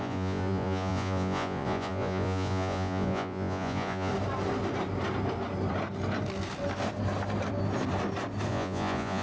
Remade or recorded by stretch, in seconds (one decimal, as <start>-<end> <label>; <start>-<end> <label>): 0.0-4.1 remade; 4.1-8.5 recorded; 8.5-9.2 remade